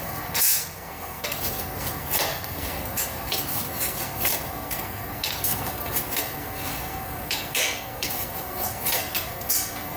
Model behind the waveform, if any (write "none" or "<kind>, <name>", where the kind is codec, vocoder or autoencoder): codec, SNAC